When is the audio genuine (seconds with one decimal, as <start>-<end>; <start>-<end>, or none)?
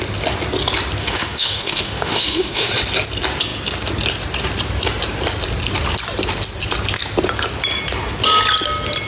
0.0-1.0; 2.7-9.1